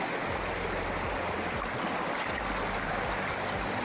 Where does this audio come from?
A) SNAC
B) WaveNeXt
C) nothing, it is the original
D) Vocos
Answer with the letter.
C